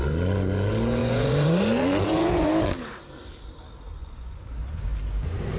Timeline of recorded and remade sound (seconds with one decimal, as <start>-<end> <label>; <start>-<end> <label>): 0.0-1.0 recorded; 1.0-2.5 remade; 2.5-4.0 recorded; 4.0-4.5 remade; 4.5-5.6 recorded